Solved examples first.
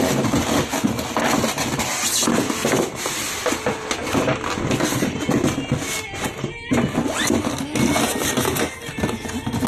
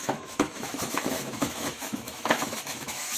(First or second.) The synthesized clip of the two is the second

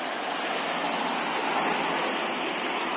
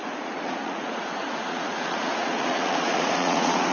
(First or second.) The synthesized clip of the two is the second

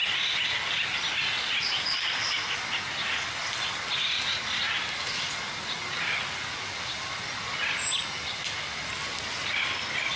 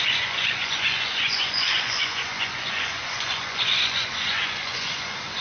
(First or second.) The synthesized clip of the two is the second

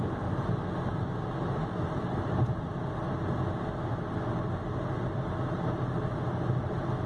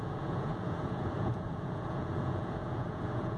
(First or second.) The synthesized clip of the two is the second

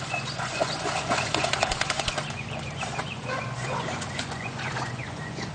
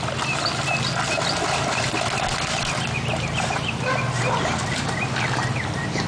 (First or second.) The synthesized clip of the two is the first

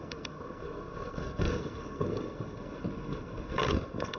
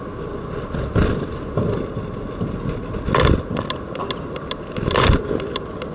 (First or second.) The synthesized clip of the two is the first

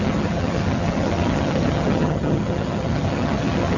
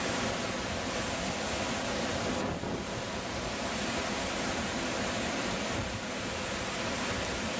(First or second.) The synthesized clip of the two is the first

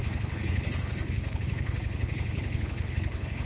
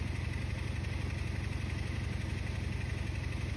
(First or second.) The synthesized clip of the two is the first